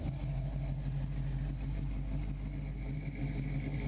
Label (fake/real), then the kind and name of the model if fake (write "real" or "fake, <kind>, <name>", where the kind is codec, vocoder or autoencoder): real